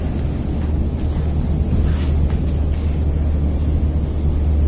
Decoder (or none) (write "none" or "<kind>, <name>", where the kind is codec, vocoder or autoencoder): none